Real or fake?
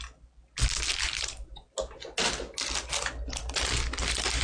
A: real